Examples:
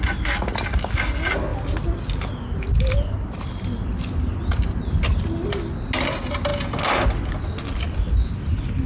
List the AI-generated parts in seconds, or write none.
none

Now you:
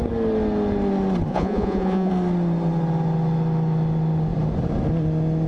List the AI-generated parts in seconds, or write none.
1.3-2.1 (vocoder, Vocos)

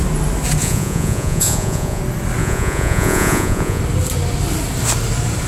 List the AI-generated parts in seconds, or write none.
0.6-2.0 (vocoder, Vocos); 2.4-3.8

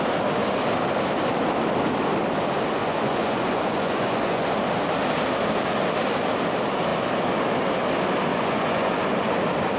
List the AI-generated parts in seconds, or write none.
2.8-4.5 (vocoder, Vocos); 8.3-8.9